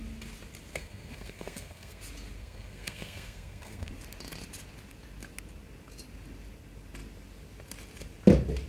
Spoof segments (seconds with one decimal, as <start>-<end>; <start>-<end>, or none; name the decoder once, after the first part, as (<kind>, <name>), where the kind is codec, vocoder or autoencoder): 0.7-2.0 (codec, SNAC); 2.4-3.9